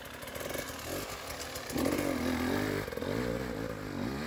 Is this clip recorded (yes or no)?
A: yes